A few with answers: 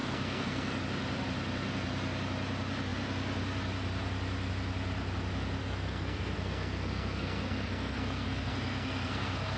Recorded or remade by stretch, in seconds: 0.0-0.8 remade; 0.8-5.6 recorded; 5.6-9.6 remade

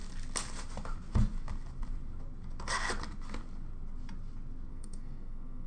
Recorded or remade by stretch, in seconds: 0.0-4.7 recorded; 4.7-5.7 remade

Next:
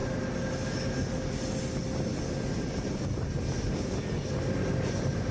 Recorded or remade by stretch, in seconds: 0.0-5.3 recorded

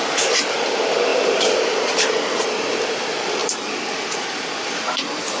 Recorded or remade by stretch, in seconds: 0.0-5.4 recorded

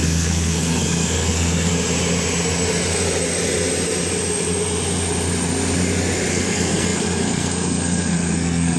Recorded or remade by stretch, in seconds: 0.0-1.7 remade; 1.7-6.3 recorded; 6.3-8.8 remade

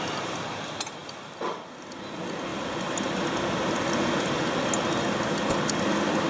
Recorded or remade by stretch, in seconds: 0.0-6.3 recorded

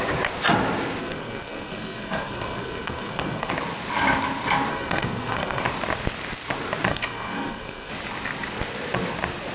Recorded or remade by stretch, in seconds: 0.0-1.0 recorded; 1.0-3.5 remade; 3.5-4.7 recorded; 4.7-5.6 remade; 5.6-6.9 recorded; 6.9-7.9 remade; 7.9-9.5 recorded